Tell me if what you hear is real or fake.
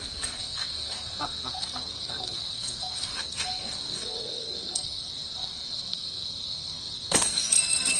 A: fake